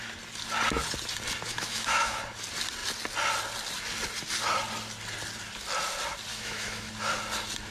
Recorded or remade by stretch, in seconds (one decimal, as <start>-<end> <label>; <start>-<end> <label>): 0.0-1.5 recorded; 1.5-2.2 remade; 2.2-6.3 recorded; 6.3-6.9 remade; 6.9-7.7 recorded

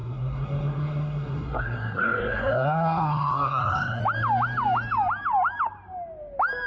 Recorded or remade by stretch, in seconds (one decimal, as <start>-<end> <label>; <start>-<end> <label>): 0.0-4.0 remade; 4.0-6.7 recorded

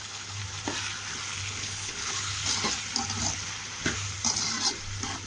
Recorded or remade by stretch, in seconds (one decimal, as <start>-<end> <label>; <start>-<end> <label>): 0.0-0.4 remade; 0.4-1.4 recorded; 1.4-2.4 remade; 2.4-5.3 recorded

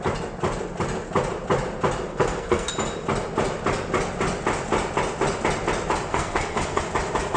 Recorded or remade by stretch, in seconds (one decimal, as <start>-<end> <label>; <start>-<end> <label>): 0.0-2.1 recorded; 2.1-2.7 remade; 2.7-6.1 recorded; 6.1-6.8 remade; 6.8-7.4 recorded

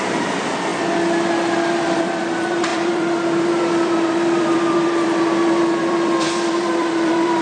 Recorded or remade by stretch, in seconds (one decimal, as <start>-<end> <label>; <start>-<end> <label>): 0.0-0.7 remade; 0.7-1.7 recorded; 1.7-7.4 remade

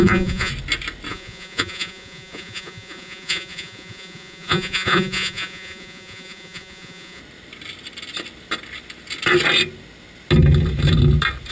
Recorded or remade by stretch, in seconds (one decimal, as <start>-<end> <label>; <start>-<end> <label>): 0.0-0.5 remade; 0.5-1.1 recorded; 1.1-7.2 remade; 7.2-11.5 recorded